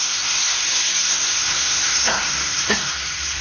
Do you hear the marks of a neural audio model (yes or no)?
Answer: yes